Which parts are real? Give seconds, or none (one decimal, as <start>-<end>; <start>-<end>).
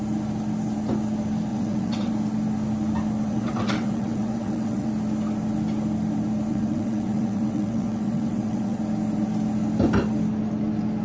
0.0-1.5; 2.1-3.3; 4.9-6.5; 8.8-11.0